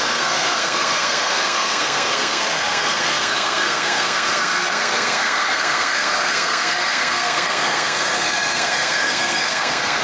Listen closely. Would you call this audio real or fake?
fake